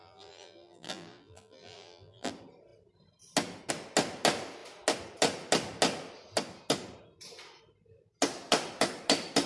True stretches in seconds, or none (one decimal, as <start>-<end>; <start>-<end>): 2.3-9.5